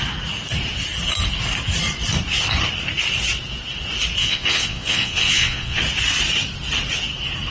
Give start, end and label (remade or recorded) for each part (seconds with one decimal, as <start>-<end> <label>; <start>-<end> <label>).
0.0-4.2 recorded; 4.2-5.8 remade; 5.8-7.5 recorded

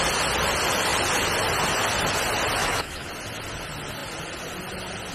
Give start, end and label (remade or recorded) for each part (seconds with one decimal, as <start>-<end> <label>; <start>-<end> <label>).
0.0-2.6 recorded; 2.6-3.1 remade; 3.1-5.1 recorded

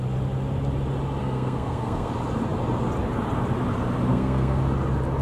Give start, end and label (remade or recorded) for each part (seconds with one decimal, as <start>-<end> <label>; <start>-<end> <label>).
0.0-1.2 recorded; 1.2-2.1 remade; 2.1-4.1 recorded; 4.1-4.6 remade; 4.6-5.2 recorded

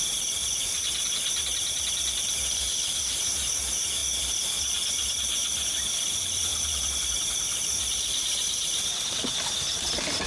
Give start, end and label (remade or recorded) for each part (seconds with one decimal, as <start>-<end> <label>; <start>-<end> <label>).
0.0-6.5 recorded; 6.5-9.3 remade; 9.3-10.3 recorded

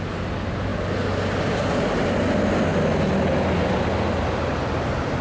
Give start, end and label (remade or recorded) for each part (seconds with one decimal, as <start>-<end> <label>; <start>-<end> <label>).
0.0-5.2 recorded

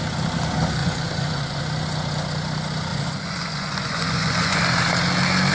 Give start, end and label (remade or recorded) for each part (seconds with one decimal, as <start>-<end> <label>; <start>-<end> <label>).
0.0-0.8 recorded; 0.8-1.6 remade; 1.6-2.9 recorded; 2.9-4.6 remade; 4.6-5.5 recorded